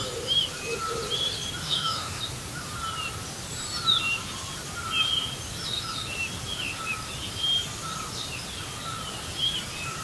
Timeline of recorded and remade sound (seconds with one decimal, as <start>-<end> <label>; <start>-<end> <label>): 0.0-1.6 recorded; 1.6-2.2 remade; 2.2-10.0 recorded